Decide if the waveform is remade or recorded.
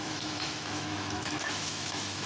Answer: remade